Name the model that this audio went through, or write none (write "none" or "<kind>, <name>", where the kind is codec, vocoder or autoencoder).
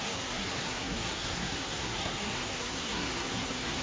codec, SNAC